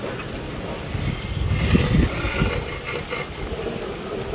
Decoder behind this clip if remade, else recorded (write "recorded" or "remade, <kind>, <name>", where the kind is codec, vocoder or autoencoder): recorded